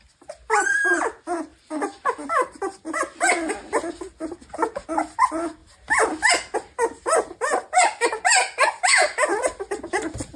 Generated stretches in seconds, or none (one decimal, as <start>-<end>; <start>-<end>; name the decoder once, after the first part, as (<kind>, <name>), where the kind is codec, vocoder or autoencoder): 1.5-2.6 (vocoder, BigVGAN v2)